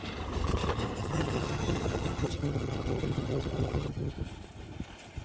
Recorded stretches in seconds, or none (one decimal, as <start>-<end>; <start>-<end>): 0.0-1.0; 4.1-5.2